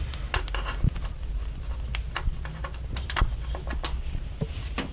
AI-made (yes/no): no